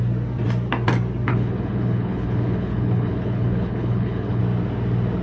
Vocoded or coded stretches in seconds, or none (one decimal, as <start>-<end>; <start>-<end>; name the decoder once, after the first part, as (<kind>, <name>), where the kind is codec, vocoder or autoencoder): 1.3-4.4 (codec, HILCodec)